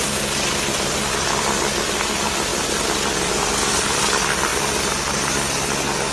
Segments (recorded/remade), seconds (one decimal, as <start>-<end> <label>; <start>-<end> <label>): 0.0-6.1 recorded